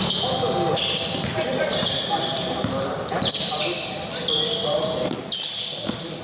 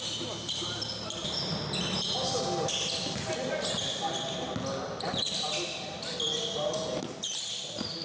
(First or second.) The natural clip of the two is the second